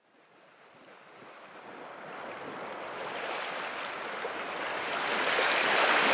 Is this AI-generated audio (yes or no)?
no